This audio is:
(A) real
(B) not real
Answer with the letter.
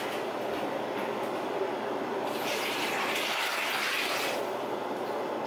A